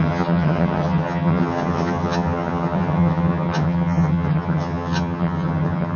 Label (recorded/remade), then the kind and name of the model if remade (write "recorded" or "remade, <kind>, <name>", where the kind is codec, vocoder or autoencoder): remade, vocoder, HiFi-GAN